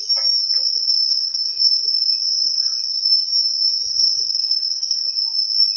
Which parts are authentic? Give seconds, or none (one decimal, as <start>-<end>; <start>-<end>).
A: 0.0-0.5; 2.9-3.9; 5.1-5.8